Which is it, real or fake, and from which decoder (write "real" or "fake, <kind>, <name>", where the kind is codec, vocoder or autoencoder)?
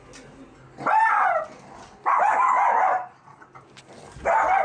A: real